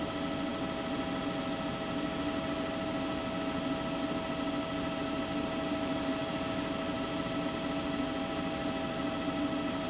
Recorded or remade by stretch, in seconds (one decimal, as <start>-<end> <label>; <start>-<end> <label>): 0.0-9.9 recorded